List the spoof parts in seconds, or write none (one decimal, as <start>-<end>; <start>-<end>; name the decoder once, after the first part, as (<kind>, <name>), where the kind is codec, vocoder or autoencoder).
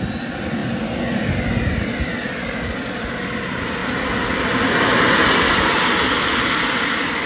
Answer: none